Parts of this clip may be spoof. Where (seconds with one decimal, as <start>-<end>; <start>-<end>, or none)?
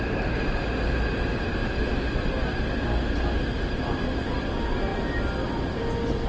none